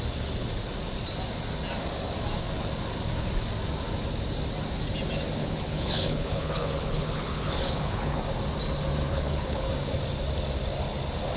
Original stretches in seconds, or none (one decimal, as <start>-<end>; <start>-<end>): 0.0-5.4; 8.2-9.1; 9.7-11.4